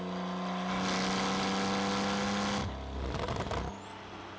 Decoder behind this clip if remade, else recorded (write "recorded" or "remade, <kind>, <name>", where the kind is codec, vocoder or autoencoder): recorded